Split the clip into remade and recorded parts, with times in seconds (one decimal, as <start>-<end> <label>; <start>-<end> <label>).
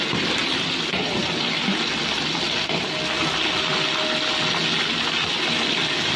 0.0-0.4 recorded; 0.4-1.2 remade; 1.2-3.7 recorded; 3.7-4.4 remade; 4.4-6.2 recorded